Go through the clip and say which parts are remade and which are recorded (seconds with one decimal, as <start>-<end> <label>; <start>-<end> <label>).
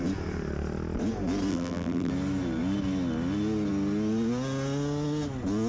0.0-1.5 recorded; 1.5-2.1 remade; 2.1-5.7 recorded